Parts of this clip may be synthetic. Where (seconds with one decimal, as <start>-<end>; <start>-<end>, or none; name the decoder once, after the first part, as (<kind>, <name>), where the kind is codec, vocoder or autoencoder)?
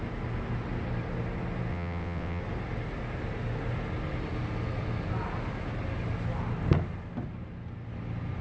1.7-2.4 (vocoder, WaveNeXt)